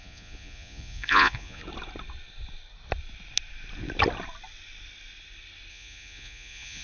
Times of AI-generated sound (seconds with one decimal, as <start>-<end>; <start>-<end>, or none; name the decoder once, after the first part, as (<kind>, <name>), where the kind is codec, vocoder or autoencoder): 0.0-1.6 (vocoder, Vocos); 5.7-6.8